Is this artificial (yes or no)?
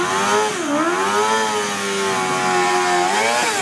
no